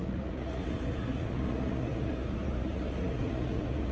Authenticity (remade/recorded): remade